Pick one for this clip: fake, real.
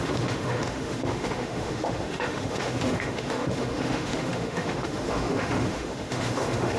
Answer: fake